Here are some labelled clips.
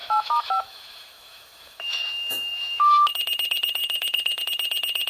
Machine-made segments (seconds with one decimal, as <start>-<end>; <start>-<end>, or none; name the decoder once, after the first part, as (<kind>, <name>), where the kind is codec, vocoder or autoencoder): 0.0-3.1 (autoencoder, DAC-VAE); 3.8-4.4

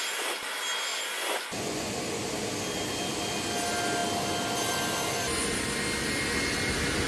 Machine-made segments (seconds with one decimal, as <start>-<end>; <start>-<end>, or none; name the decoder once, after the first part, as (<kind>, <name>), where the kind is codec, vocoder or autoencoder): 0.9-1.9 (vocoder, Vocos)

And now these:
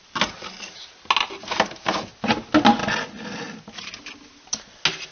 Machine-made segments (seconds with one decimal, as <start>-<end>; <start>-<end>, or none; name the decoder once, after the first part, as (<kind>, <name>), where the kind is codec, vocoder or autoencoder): none

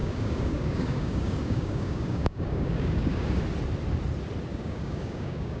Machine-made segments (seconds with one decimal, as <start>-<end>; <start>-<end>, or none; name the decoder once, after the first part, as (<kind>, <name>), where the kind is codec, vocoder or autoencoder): 0.0-3.4 (codec, DAC); 4.5-5.6

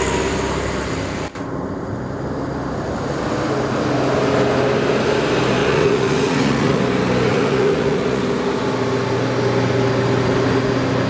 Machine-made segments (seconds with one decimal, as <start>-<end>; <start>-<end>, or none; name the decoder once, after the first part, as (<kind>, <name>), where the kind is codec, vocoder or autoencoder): 5.6-6.8 (vocoder, Vocos); 7.3-8.2

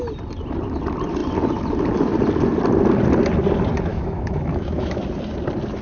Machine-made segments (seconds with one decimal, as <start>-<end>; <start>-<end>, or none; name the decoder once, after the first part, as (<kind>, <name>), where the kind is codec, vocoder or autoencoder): 3.9-5.0 (autoencoder, DAC-VAE)